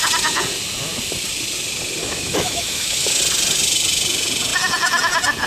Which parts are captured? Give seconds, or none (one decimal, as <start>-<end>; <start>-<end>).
0.0-2.0; 3.2-5.5